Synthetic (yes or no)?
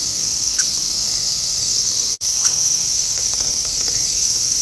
yes